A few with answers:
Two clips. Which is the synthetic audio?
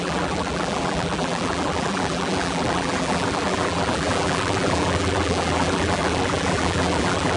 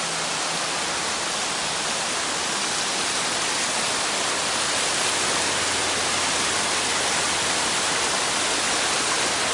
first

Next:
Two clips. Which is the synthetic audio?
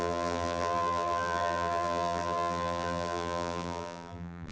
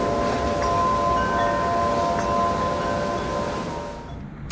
first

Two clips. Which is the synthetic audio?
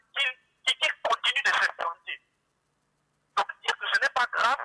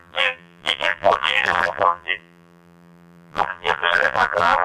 second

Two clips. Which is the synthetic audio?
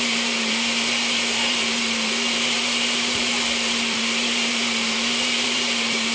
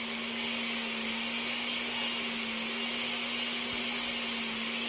first